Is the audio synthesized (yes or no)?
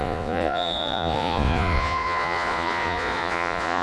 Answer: yes